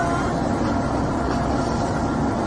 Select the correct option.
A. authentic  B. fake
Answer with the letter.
A